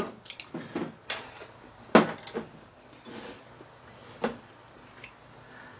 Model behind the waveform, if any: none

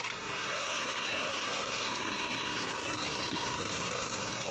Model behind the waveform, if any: codec, SNAC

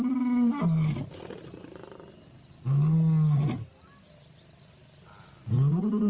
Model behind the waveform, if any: none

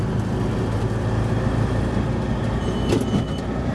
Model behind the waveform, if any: none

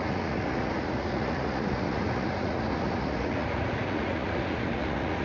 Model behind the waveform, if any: vocoder, Vocos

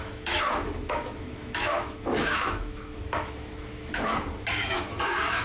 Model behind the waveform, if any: autoencoder, DAC-VAE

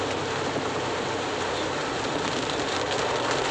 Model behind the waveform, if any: none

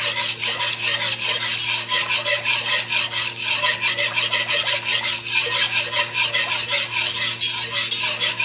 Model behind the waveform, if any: none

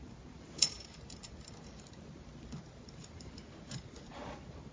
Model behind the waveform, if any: vocoder, BigVGAN v2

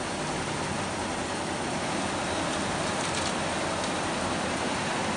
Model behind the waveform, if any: none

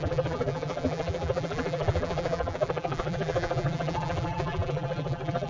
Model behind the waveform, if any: vocoder, BigVGAN v2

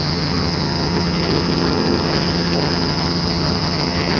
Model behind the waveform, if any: vocoder, HiFi-GAN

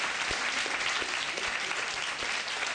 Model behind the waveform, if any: none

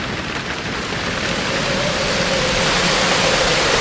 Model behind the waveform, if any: none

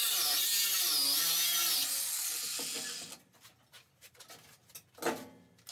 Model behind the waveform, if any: none